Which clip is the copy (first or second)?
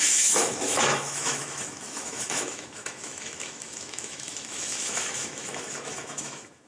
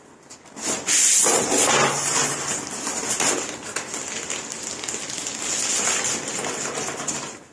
first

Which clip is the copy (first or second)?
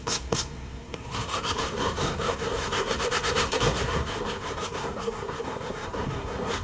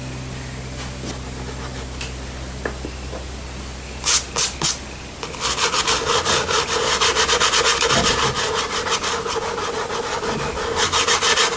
first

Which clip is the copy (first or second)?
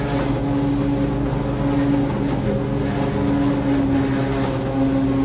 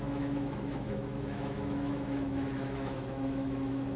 second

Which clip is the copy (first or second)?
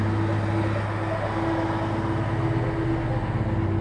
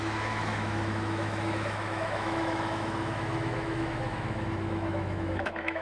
second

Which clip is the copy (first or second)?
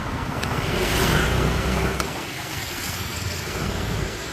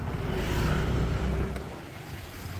first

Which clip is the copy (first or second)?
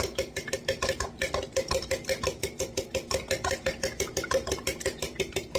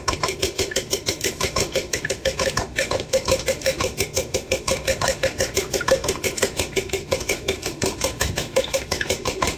second